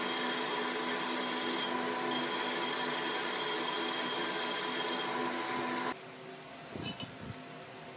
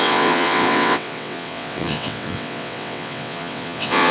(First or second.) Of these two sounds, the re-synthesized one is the second